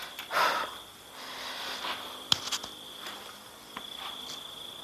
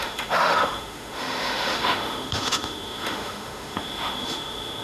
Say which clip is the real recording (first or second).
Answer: first